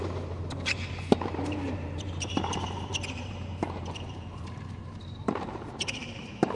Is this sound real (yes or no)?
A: no